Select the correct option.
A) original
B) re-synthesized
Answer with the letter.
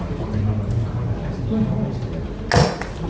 A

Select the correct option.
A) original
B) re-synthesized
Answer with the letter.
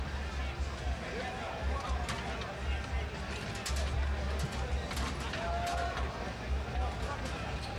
A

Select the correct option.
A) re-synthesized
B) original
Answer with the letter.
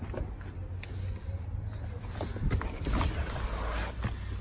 B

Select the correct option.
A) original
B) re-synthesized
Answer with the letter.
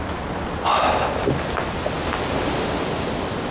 A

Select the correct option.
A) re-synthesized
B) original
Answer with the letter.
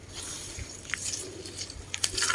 A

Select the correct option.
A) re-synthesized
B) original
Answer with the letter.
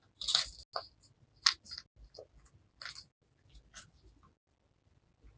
B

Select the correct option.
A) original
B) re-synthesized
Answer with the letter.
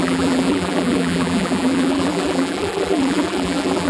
B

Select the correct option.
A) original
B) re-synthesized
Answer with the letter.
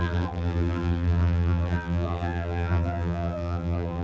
B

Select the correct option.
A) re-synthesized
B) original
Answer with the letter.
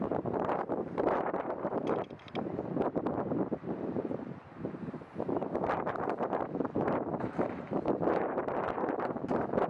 A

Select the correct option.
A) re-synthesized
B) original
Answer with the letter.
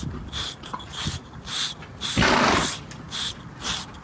B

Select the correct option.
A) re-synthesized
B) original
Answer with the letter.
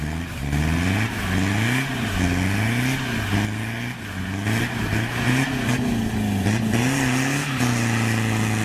B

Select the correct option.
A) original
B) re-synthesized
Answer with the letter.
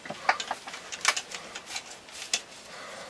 A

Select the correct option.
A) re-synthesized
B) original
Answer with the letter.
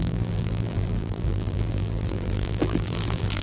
A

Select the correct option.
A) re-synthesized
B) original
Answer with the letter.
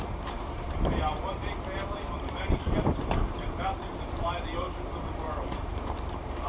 A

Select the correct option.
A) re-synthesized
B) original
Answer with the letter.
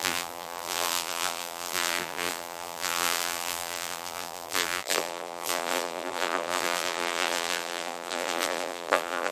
A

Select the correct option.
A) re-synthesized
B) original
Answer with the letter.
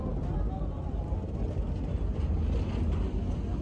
B